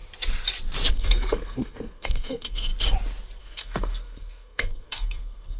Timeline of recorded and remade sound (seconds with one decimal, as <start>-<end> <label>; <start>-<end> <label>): 0.0-0.9 recorded; 0.9-2.7 remade; 2.7-3.4 recorded; 3.4-5.6 remade